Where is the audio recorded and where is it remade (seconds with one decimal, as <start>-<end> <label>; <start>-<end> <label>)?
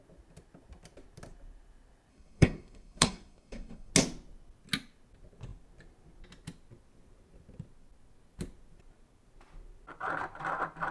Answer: 0.0-2.1 recorded; 2.1-3.9 remade; 3.9-10.9 recorded